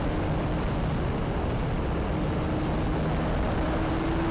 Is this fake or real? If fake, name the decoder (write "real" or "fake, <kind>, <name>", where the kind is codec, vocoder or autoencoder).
real